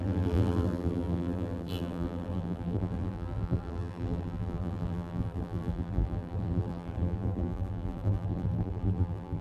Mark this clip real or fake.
fake